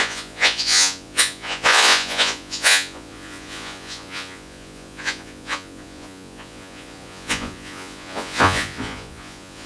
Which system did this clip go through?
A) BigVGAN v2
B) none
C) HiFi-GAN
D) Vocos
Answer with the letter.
D